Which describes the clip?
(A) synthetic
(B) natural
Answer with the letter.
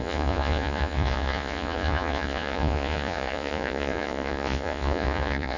A